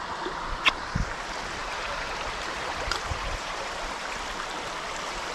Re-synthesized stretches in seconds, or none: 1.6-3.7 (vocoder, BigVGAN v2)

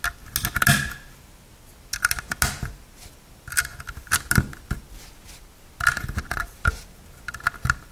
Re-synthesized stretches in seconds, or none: none

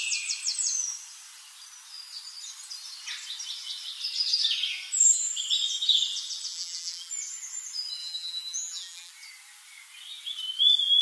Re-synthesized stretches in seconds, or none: 6.5-7.1 (vocoder, BigVGAN v2); 8.0-9.1